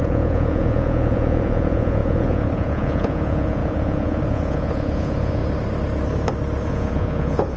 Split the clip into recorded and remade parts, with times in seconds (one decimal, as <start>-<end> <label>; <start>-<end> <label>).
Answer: 0.0-5.4 remade; 5.4-6.7 recorded; 6.7-7.6 remade